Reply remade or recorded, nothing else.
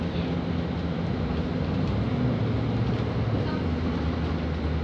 recorded